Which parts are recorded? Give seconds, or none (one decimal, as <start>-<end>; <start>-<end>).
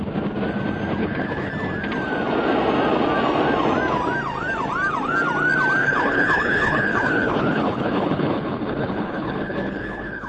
0.0-1.0; 1.5-5.8